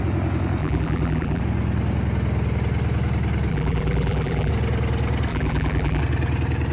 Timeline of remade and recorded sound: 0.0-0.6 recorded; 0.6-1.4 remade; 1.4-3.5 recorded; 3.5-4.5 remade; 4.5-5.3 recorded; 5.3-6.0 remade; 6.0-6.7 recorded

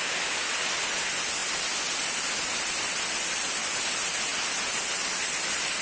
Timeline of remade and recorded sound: 0.0-5.8 recorded

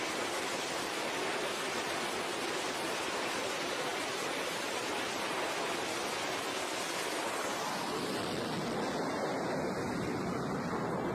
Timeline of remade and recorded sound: 0.0-11.1 recorded

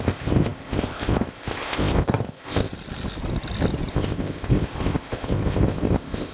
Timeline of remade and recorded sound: 0.0-2.7 remade; 2.7-3.9 recorded; 3.9-6.3 remade

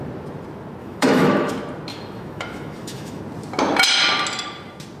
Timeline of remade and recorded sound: 0.0-0.8 recorded; 0.8-1.5 remade; 1.5-1.9 recorded; 1.9-3.2 remade; 3.2-5.0 recorded

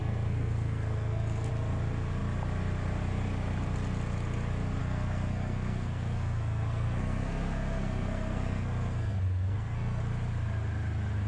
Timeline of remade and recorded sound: 0.0-1.5 remade; 1.5-4.8 recorded; 4.8-10.0 remade; 10.0-11.3 recorded